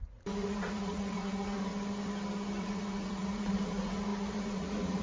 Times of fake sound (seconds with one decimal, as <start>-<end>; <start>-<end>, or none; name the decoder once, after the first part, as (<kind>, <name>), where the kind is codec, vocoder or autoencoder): 0.0-1.7 (vocoder, Vocos); 2.6-5.0